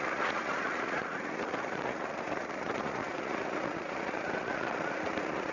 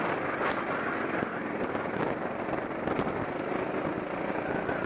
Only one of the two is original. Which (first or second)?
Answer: second